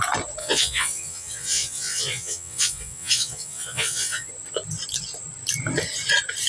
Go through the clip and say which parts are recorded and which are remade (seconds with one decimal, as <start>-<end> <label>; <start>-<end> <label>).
0.0-0.4 recorded; 0.4-4.3 remade; 4.3-6.5 recorded